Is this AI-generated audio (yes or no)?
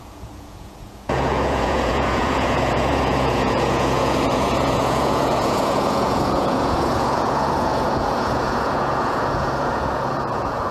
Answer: yes